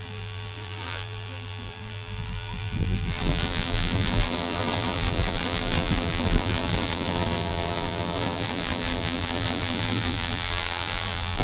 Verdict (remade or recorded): remade